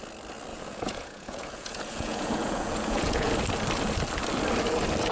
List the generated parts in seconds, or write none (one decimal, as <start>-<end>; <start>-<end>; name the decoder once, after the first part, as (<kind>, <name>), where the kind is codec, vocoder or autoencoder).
0.5-3.3 (vocoder, Vocos)